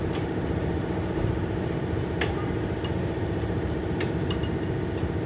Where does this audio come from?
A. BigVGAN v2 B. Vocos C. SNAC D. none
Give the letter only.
D